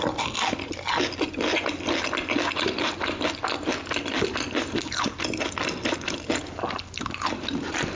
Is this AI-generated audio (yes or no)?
no